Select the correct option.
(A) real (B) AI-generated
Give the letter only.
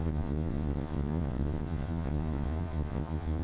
B